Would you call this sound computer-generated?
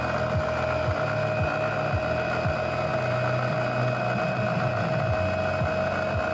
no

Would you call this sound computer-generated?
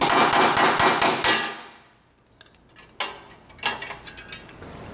no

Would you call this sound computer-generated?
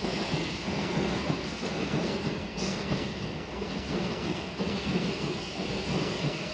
yes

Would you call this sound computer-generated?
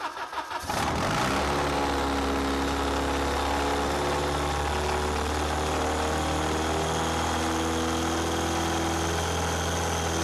no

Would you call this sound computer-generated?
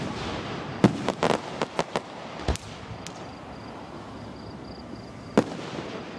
no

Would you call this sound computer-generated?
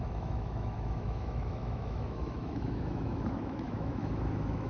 yes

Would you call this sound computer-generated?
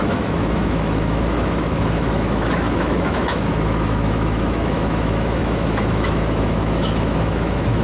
yes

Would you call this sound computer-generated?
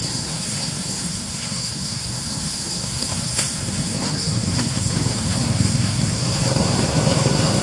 yes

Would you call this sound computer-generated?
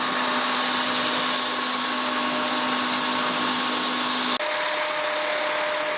no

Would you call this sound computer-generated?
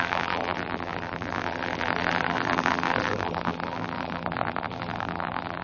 yes